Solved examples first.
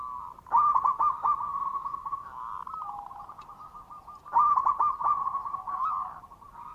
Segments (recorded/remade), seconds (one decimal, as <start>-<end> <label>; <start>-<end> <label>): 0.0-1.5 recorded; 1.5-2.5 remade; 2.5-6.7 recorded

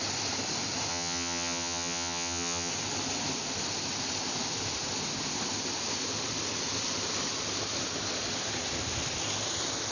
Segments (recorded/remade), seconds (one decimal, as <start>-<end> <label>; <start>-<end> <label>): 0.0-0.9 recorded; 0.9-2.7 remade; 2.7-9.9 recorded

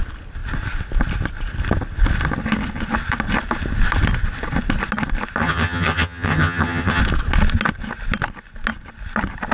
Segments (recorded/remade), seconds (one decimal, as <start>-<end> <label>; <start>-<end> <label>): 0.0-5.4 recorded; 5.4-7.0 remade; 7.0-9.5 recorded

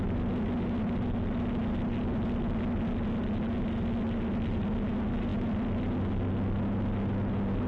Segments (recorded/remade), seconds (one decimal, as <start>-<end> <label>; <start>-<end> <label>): 0.0-7.7 recorded

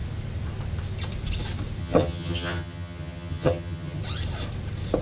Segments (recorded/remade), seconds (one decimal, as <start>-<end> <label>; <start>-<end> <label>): 0.0-1.8 recorded; 1.8-4.0 remade; 4.0-5.0 recorded

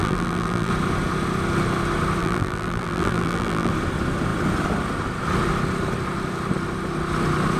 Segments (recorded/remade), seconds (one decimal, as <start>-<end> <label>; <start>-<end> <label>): 0.0-0.7 remade; 0.7-2.2 recorded; 2.2-3.7 remade; 3.7-7.6 recorded

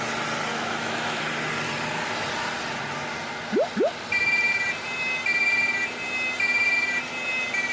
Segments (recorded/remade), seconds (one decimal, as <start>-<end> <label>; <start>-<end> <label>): 0.0-0.5 recorded; 0.5-1.2 remade; 1.2-7.7 recorded